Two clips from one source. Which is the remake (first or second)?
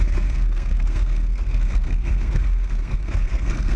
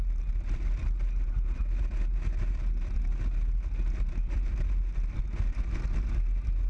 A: first